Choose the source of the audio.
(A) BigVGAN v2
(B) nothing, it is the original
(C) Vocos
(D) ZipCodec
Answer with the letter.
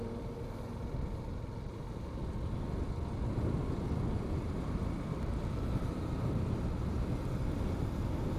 B